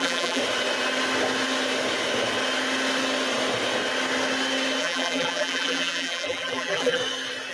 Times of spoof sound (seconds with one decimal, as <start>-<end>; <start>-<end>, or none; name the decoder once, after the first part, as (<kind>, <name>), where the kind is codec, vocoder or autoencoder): 0.0-0.4 (vocoder, BigVGAN v2); 4.8-7.0